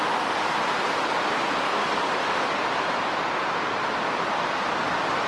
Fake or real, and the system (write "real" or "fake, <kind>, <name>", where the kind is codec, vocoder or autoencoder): real